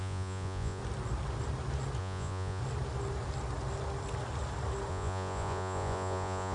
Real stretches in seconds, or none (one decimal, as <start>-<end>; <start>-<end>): 0.8-2.0; 2.6-4.9